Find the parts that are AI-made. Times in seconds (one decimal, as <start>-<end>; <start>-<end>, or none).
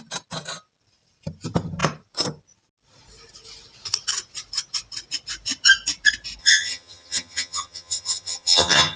6.4-9.0